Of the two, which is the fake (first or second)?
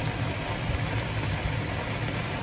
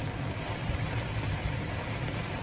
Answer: second